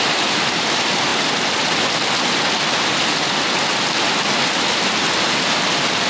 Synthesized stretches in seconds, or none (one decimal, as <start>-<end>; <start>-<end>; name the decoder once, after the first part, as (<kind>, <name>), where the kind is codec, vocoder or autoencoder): none